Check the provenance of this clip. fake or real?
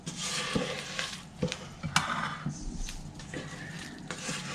real